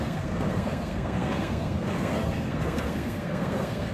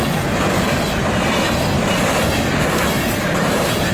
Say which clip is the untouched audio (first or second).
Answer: second